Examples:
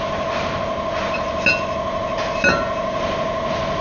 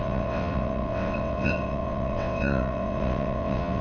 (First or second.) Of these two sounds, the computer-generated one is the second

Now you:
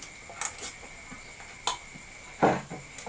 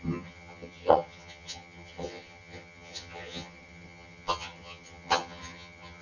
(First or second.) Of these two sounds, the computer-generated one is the second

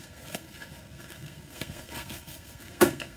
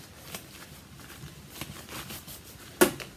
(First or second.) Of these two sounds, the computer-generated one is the first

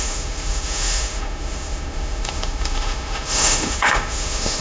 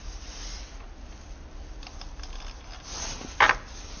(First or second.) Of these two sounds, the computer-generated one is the first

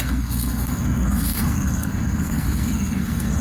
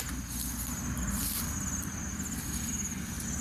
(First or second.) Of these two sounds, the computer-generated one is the first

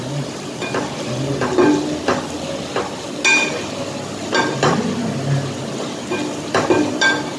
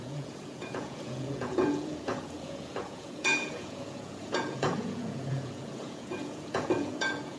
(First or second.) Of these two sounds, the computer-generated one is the second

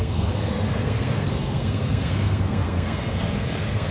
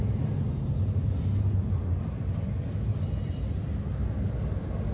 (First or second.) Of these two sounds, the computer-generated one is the first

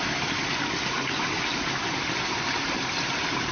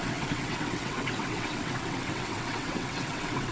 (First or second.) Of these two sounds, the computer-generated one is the second